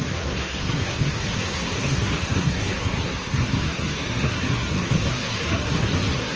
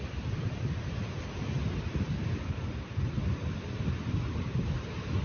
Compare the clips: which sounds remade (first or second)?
first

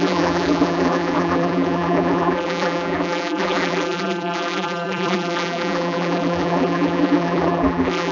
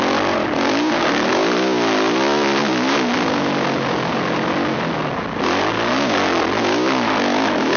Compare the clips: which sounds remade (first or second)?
first